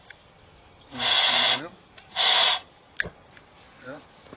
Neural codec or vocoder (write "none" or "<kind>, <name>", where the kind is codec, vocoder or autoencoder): none